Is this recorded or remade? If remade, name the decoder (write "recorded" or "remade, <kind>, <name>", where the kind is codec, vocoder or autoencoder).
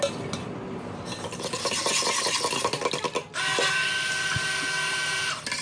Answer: recorded